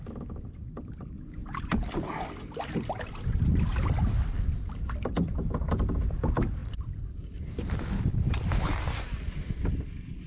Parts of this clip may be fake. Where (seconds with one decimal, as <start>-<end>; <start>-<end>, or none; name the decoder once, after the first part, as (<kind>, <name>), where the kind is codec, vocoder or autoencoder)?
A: 1.4-3.3 (vocoder, BigVGAN v2); 3.7-4.7; 6.6-7.7